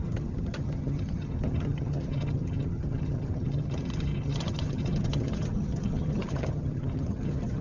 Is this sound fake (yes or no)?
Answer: yes